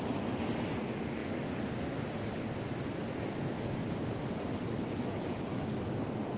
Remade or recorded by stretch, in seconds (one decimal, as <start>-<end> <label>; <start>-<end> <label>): 0.0-5.5 recorded; 5.5-6.0 remade; 6.0-6.4 recorded